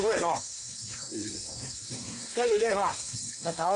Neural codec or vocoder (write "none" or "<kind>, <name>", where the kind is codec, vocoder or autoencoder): codec, SNAC